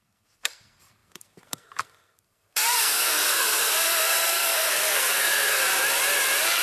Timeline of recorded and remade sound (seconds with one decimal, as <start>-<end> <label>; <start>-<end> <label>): 0.0-5.6 remade; 5.6-6.6 recorded